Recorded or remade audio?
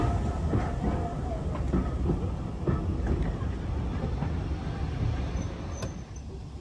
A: recorded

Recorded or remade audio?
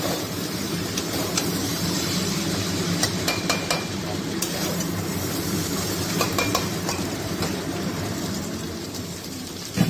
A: remade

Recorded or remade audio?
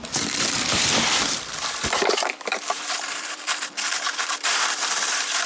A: remade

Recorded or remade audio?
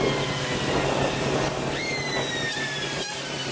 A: recorded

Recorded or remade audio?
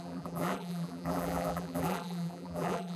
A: remade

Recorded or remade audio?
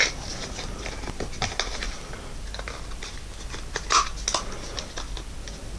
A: recorded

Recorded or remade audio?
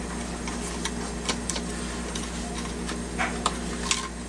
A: recorded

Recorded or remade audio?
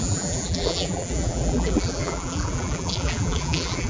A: remade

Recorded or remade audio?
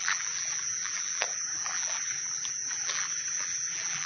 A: remade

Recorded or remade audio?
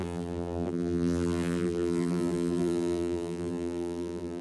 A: remade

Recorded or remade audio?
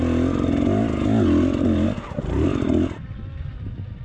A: recorded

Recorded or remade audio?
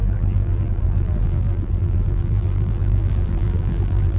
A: remade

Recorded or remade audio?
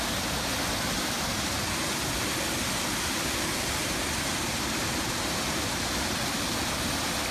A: recorded